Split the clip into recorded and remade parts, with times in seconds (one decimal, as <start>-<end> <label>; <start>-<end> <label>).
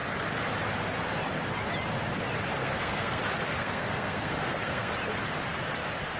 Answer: 0.0-2.6 recorded; 2.6-3.2 remade; 3.2-3.6 recorded; 3.6-4.9 remade; 4.9-6.2 recorded